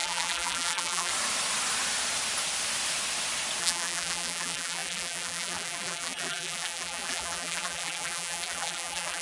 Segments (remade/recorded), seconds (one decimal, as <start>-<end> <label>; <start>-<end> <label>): 0.0-1.1 remade; 1.1-3.6 recorded; 3.6-9.2 remade